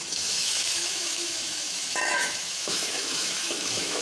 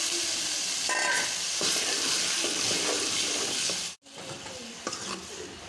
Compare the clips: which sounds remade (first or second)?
first